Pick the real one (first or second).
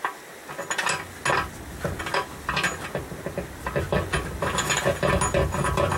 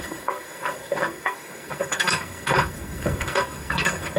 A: first